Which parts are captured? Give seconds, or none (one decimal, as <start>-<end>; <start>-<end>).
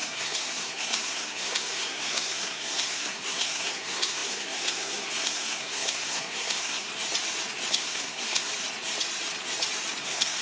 6.9-7.7; 8.5-10.0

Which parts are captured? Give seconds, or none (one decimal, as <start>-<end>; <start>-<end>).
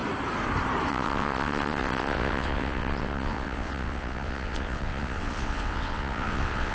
0.0-0.9